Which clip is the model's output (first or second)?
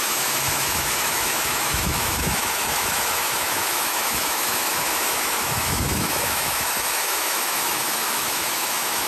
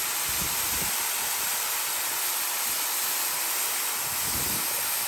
first